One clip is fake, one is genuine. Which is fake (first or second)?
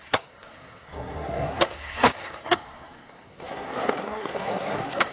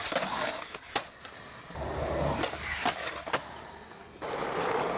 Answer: first